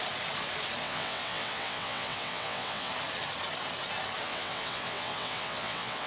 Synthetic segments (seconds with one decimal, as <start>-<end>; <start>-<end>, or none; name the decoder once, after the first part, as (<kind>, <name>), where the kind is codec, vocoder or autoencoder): 0.8-2.9 (vocoder, WaveNeXt); 4.3-6.1

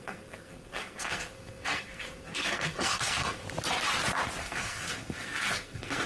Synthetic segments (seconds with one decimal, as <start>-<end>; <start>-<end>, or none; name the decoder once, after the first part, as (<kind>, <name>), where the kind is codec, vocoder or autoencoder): 0.0-3.4 (codec, SNAC); 4.4-6.1

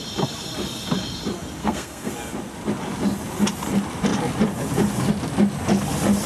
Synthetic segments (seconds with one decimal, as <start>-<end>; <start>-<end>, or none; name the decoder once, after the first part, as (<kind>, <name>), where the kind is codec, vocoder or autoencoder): 1.6-2.1 (codec, SNAC)

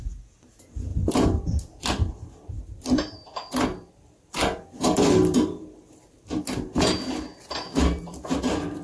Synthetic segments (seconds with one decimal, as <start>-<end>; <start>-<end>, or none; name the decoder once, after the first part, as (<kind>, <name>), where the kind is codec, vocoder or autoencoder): 0.9-3.9 (vocoder, BigVGAN v2); 4.4-6.2